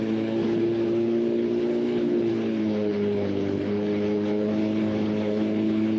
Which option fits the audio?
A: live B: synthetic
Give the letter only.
B